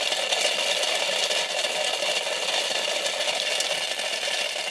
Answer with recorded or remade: recorded